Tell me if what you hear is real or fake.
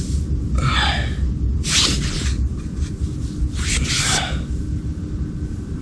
real